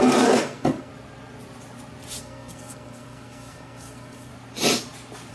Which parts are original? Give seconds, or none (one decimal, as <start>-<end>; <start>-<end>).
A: 0.9-2.2; 4.3-5.3